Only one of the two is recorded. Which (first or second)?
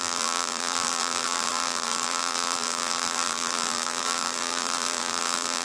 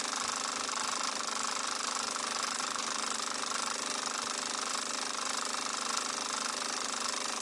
second